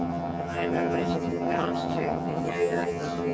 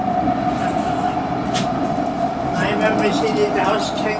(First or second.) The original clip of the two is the second